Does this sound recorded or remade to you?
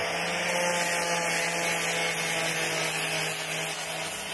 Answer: recorded